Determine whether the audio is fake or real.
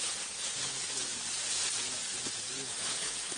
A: fake